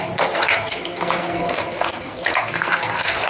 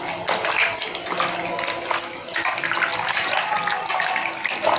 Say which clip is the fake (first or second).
first